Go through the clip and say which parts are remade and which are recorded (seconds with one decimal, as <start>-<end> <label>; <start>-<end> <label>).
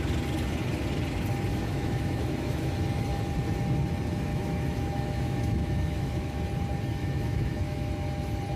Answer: 0.0-1.5 recorded; 1.5-2.7 remade; 2.7-4.3 recorded; 4.3-6.4 remade; 6.4-7.0 recorded; 7.0-7.9 remade; 7.9-8.6 recorded